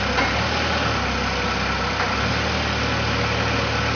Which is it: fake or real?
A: real